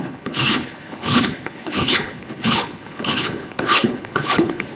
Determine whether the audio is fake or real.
fake